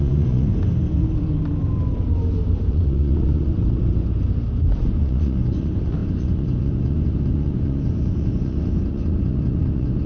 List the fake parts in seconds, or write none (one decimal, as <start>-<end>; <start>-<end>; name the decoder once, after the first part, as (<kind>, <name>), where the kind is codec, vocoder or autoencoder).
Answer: 0.0-0.5 (vocoder, Vocos); 2.7-3.6; 4.8-10.1